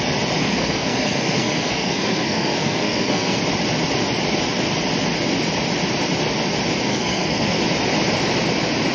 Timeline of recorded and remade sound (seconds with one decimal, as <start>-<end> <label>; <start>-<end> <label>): 0.0-0.4 recorded; 0.4-3.4 remade; 3.4-6.9 recorded; 6.9-7.6 remade; 7.6-8.9 recorded